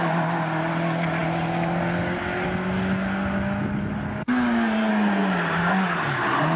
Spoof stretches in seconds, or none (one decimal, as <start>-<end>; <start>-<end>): none